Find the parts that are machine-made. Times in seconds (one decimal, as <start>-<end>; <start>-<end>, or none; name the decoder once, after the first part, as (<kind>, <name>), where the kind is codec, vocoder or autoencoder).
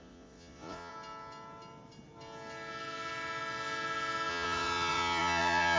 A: 0.0-0.9 (vocoder, Vocos); 4.3-5.8